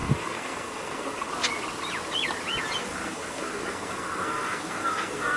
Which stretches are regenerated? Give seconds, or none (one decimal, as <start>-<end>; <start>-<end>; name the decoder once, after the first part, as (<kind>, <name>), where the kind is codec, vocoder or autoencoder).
0.0-1.3 (codec, SNAC); 2.8-5.4